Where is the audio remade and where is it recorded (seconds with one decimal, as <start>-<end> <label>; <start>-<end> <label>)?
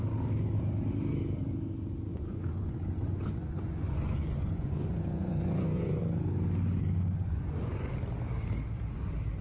0.0-2.1 recorded; 2.1-6.0 remade; 6.0-6.8 recorded; 6.8-7.9 remade; 7.9-9.4 recorded